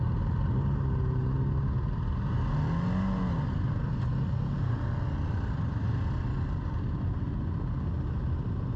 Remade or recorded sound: recorded